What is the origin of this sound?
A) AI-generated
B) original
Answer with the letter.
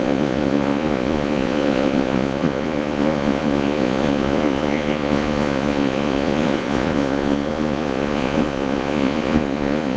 A